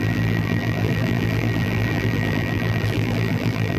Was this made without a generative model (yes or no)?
no